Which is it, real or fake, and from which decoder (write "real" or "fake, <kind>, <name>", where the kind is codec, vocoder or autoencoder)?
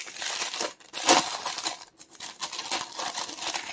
real